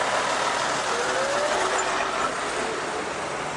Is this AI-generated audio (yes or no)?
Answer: no